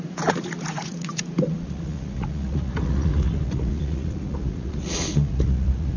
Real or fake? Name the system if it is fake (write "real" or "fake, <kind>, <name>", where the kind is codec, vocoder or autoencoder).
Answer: fake, vocoder, Vocos